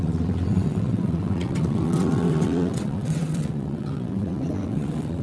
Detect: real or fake fake